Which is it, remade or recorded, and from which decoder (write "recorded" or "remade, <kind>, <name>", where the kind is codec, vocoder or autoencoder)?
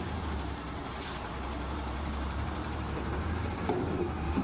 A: remade, vocoder, BigVGAN v2